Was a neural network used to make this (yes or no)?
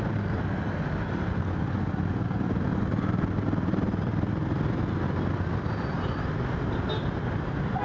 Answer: no